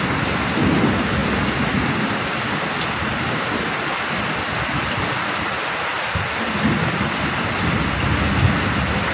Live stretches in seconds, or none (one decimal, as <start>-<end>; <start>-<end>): 0.0-9.1